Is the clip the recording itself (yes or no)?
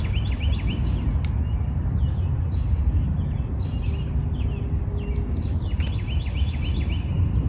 yes